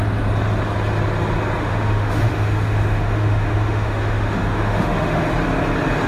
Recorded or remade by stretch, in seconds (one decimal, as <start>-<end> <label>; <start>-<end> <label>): 0.0-1.6 recorded; 1.6-5.3 remade; 5.3-6.1 recorded